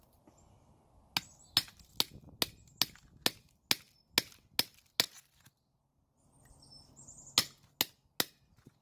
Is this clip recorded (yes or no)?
yes